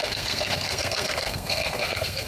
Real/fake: fake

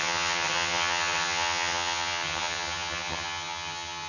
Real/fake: fake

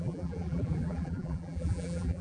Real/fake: fake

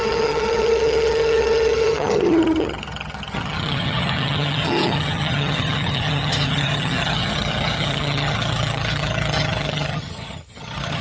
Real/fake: fake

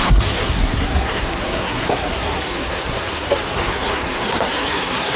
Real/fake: fake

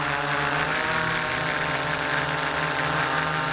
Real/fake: real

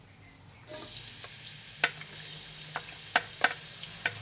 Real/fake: real